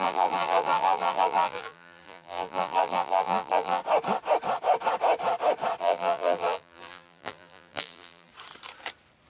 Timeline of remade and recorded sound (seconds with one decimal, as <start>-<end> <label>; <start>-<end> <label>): 0.0-3.8 remade; 3.8-5.8 recorded; 5.8-8.3 remade; 8.3-9.3 recorded